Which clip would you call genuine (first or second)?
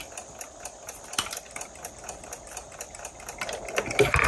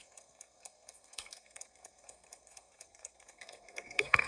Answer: first